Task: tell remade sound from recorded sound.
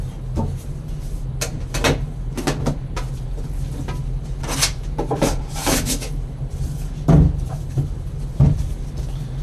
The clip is recorded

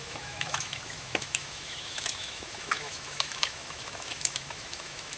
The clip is remade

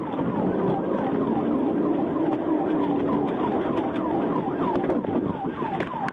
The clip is recorded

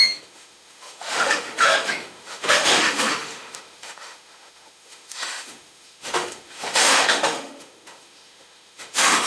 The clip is remade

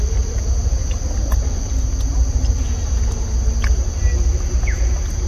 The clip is recorded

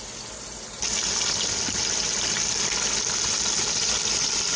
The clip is recorded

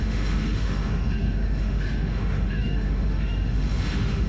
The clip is remade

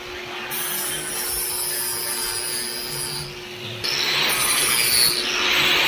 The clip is recorded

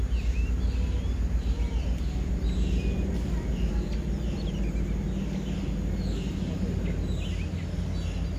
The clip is recorded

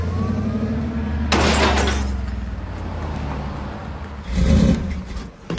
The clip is recorded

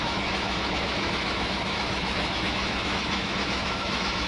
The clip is remade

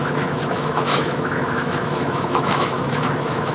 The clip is remade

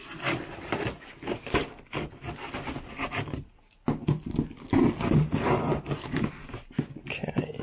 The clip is recorded